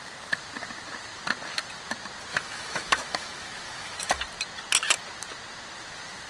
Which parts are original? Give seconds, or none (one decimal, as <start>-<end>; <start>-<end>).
0.0-2.3; 4.1-6.3